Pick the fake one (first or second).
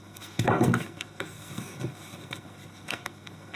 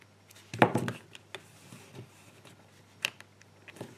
first